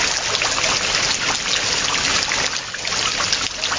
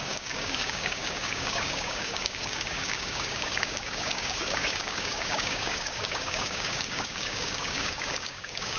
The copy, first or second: second